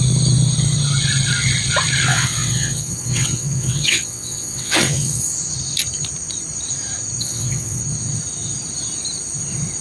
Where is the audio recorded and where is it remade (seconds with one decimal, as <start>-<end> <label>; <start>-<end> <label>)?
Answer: 0.0-2.1 recorded; 2.1-5.2 remade; 5.2-7.2 recorded; 7.2-7.8 remade; 7.8-9.8 recorded